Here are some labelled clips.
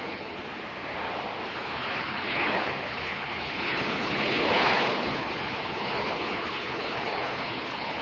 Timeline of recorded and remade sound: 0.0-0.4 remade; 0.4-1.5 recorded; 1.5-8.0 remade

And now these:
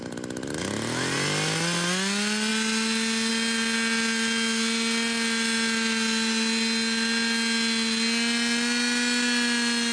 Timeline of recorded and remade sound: 0.0-9.9 recorded

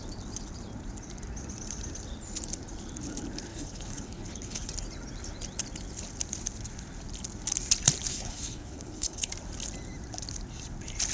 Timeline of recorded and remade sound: 0.0-3.5 recorded; 3.5-4.7 remade; 4.7-8.1 recorded; 8.1-9.3 remade; 9.3-11.1 recorded